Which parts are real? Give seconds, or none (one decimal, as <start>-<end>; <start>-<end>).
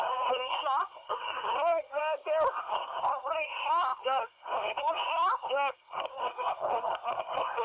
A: 2.0-2.6